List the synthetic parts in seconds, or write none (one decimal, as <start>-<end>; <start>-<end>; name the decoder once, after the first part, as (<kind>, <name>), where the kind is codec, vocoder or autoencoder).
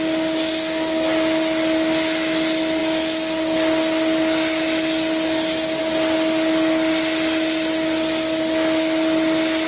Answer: none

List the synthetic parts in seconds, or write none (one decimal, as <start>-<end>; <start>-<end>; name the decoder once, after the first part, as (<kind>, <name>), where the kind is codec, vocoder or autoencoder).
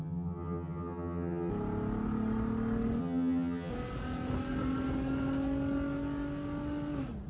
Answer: 0.0-1.5 (vocoder, HiFi-GAN); 3.0-3.7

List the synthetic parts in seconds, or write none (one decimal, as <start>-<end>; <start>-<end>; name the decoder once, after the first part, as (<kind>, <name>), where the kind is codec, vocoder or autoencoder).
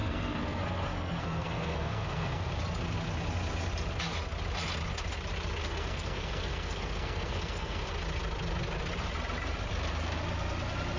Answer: 0.0-2.6 (codec, SNAC); 5.6-7.9